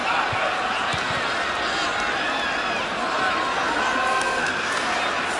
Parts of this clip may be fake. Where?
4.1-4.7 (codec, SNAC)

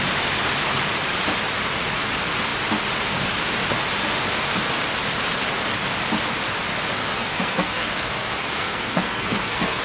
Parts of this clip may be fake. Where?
7.0-9.8 (codec, SNAC)

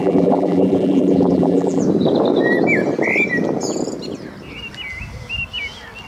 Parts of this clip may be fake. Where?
0.0-1.8 (vocoder, BigVGAN v2)